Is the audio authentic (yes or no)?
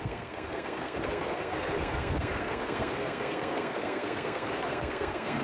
no